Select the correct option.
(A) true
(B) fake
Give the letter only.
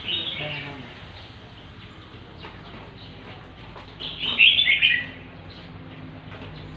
A